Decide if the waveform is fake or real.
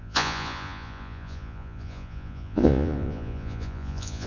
fake